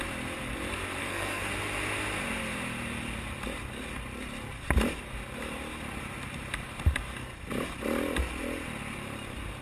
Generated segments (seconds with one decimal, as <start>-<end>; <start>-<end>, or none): 1.0-1.5